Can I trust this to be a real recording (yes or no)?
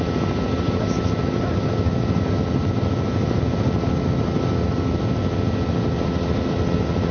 yes